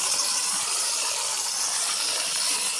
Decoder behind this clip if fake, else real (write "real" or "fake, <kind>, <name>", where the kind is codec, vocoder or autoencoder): real